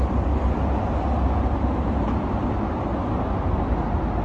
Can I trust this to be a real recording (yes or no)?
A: yes